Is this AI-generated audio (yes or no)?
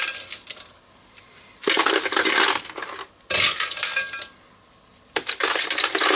no